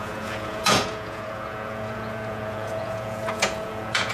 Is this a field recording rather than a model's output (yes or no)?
no